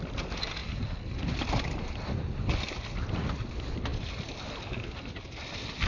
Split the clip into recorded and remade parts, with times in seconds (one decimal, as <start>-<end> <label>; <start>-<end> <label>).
0.0-0.6 recorded; 0.6-3.5 remade; 3.5-3.9 recorded; 3.9-5.5 remade; 5.5-5.9 recorded